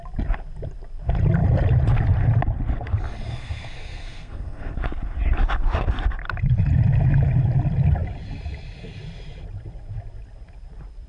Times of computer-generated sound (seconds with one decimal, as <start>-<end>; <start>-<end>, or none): 3.3-4.7